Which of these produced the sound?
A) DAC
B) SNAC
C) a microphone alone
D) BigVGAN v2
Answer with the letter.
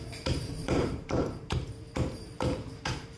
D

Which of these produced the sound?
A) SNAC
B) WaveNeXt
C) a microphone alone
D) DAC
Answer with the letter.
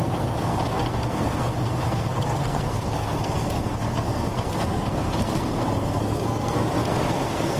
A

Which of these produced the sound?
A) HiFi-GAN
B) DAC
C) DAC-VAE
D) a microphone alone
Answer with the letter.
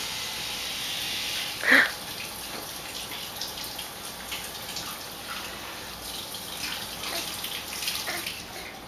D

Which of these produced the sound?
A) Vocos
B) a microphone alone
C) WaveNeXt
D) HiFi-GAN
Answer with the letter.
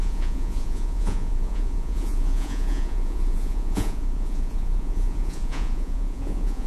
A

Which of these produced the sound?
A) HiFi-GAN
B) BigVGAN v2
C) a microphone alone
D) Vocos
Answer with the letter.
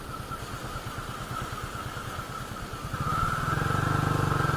C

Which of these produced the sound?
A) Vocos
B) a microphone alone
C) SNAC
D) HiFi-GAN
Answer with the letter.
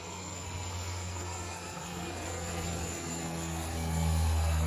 C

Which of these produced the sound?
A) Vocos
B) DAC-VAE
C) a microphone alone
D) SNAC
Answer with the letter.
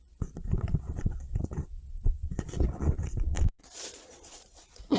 A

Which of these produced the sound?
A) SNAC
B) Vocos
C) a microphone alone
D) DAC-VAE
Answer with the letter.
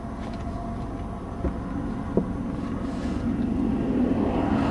C